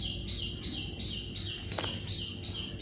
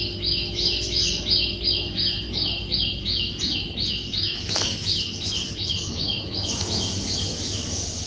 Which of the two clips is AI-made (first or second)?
second